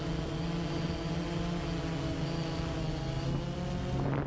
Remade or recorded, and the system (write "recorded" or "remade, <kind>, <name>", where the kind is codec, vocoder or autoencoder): recorded